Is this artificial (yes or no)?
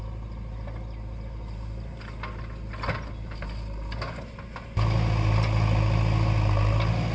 no